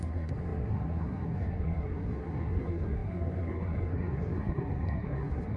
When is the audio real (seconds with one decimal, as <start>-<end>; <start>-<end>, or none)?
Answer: none